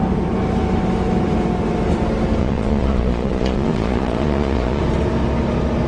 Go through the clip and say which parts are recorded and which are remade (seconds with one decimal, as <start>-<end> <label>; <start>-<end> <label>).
0.0-2.4 recorded; 2.4-4.8 remade; 4.8-5.9 recorded